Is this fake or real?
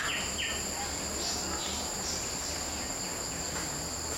real